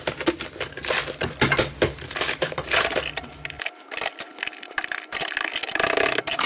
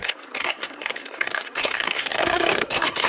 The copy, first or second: second